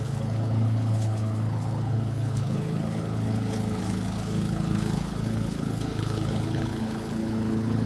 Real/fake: fake